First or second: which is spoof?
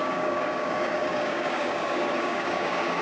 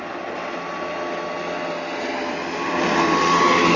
first